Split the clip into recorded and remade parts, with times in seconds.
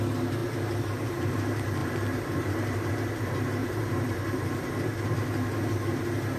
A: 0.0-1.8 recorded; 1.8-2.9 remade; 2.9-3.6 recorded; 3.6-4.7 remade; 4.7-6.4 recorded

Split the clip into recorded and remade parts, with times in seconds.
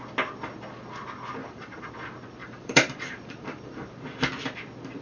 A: 0.0-1.4 recorded; 1.4-1.9 remade; 1.9-2.4 recorded; 2.4-3.9 remade; 3.9-5.0 recorded